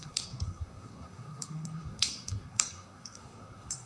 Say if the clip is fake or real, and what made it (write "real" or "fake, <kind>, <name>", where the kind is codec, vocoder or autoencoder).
fake, codec, SNAC